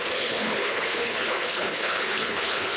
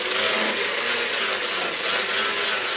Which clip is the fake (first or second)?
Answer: first